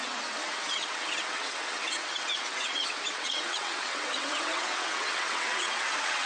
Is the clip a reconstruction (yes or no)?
yes